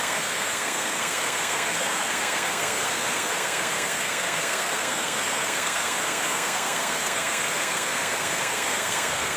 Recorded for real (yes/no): no